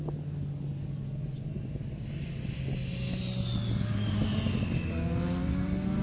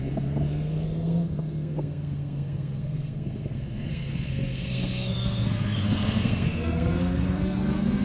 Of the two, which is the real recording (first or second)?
first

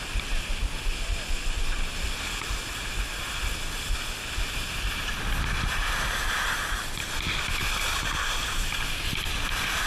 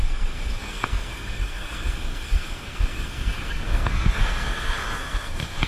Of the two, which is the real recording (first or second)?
first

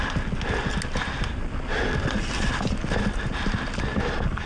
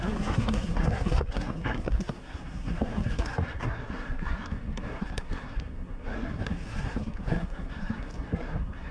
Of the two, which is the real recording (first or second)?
first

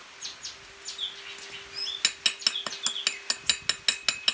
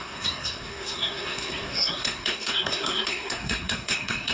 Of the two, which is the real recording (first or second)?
first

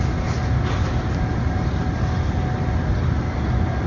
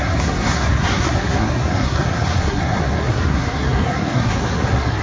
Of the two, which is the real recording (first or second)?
first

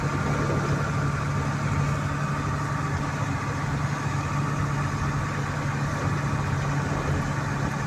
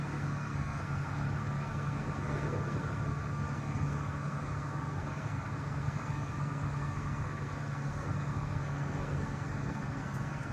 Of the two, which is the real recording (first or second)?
first